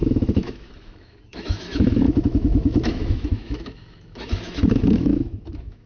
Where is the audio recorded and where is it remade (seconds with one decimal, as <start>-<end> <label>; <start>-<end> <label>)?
0.0-5.9 remade